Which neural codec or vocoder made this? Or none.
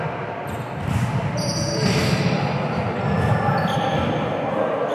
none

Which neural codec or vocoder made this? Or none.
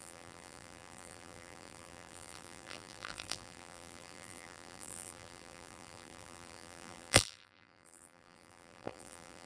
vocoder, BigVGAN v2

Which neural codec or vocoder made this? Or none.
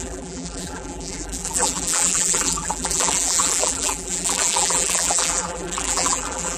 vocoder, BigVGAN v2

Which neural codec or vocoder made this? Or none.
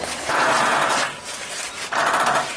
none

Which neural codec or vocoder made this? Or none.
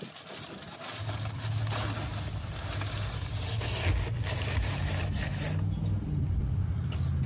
none